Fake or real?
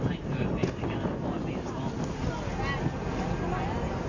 real